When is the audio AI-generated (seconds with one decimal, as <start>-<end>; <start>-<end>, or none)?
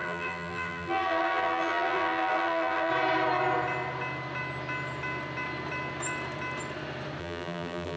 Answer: 0.0-2.9; 7.2-8.0